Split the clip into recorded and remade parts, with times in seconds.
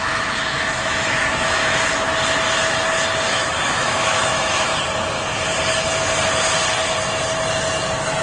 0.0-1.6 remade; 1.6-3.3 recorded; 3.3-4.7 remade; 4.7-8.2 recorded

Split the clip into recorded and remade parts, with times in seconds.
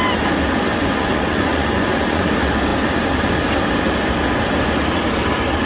0.0-0.8 recorded; 0.8-2.3 remade; 2.3-5.7 recorded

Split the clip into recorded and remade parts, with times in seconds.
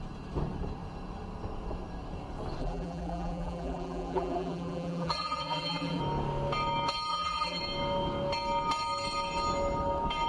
0.0-2.6 recorded; 2.6-6.0 remade; 6.0-7.1 recorded; 7.1-7.6 remade; 7.6-10.3 recorded